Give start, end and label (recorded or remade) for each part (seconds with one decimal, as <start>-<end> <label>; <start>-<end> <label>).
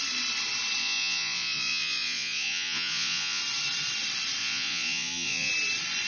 0.0-0.8 recorded; 0.8-3.4 remade; 3.4-4.4 recorded; 4.4-5.5 remade; 5.5-6.1 recorded